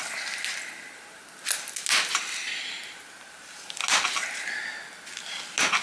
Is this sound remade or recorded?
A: recorded